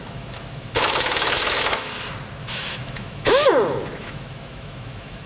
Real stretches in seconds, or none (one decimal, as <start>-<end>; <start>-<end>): 1.9-2.4; 3.5-3.9